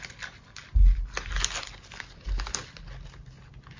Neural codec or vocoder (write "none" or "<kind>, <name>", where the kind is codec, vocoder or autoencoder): none